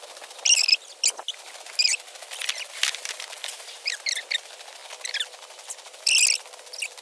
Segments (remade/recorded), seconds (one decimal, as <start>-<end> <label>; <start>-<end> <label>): 0.0-7.0 recorded